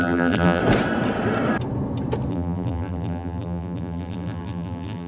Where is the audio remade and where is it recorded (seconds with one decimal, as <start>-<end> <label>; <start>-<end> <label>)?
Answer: 0.0-0.6 remade; 0.6-2.3 recorded; 2.3-5.1 remade